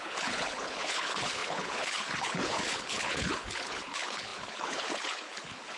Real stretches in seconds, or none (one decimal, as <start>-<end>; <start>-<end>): none

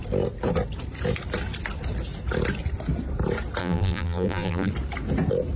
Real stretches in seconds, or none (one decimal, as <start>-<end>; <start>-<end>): 0.0-3.6; 4.7-5.6

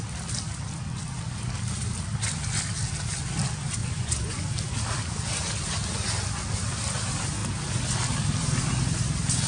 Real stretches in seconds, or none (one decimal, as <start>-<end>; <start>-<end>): 0.0-3.8; 4.5-9.5